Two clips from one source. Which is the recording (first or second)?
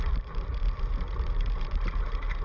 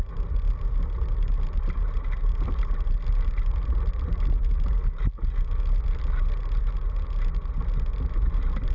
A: second